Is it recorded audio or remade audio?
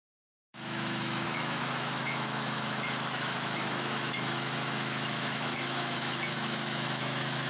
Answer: remade